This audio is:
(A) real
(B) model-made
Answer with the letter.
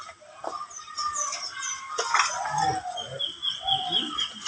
A